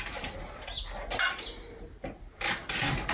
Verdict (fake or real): real